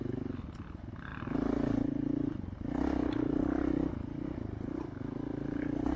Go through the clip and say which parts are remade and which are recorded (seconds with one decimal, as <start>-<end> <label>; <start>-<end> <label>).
0.0-6.0 recorded